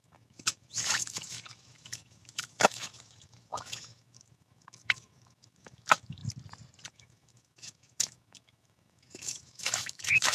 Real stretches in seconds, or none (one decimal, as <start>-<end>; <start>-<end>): 6.2-6.9